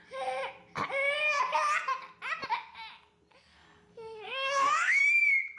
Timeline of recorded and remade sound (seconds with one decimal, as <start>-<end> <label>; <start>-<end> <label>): 0.0-3.5 recorded; 3.5-5.0 remade; 5.0-5.6 recorded